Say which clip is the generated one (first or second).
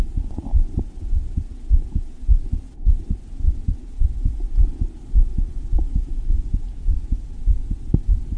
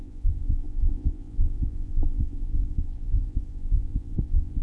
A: second